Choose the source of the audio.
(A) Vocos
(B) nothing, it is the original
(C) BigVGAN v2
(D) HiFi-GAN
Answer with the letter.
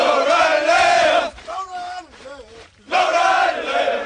C